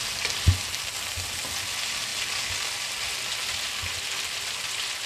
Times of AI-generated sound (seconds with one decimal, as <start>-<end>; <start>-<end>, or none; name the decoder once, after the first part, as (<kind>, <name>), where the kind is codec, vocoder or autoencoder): none